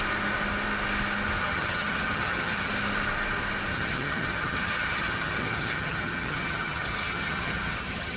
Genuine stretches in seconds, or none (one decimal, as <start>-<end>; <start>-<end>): 0.0-1.4; 2.7-3.7